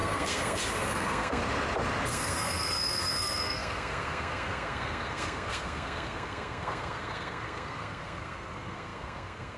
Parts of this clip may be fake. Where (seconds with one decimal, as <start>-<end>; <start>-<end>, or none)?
0.0-1.4; 2.1-9.6